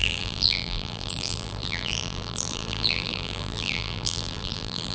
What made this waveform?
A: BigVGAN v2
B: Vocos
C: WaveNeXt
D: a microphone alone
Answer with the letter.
A